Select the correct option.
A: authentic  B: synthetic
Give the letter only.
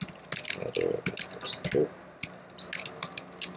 A